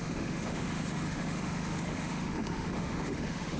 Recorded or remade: remade